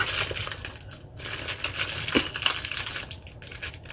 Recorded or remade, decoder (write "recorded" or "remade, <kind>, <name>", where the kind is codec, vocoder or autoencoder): recorded